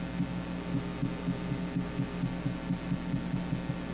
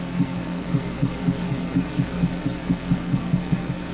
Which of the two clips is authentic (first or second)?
first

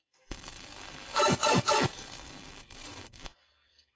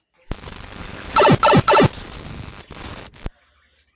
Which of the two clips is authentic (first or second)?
second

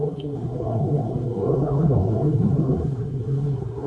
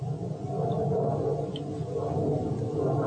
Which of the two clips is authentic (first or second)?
second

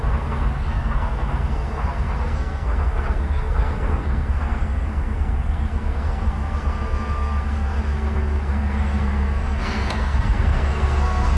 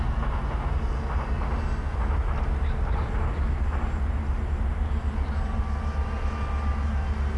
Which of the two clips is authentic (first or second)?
second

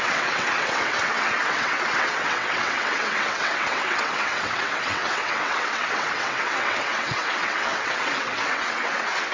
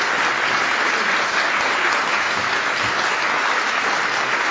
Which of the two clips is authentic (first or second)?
second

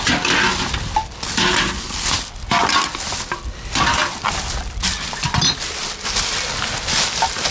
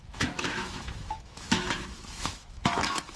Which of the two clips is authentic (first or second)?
first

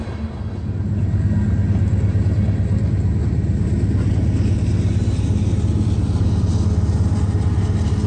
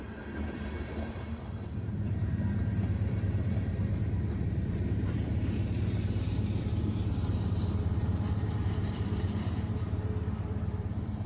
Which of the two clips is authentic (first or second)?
first